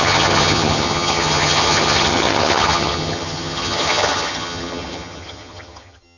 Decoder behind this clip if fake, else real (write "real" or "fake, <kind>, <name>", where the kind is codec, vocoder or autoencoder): fake, vocoder, HiFi-GAN